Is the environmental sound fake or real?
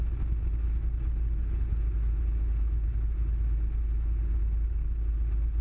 real